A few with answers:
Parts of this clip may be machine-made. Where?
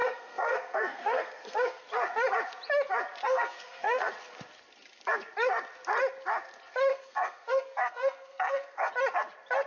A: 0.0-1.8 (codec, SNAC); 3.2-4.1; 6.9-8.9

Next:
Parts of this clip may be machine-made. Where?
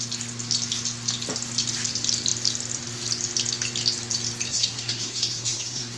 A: 4.5-6.0 (codec, SNAC)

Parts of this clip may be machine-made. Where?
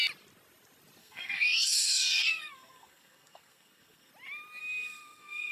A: 1.0-4.1 (codec, SNAC); 4.6-5.5